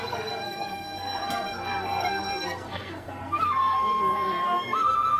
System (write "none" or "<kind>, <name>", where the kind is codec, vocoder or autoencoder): codec, SNAC